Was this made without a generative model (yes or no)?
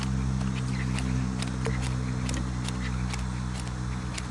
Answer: yes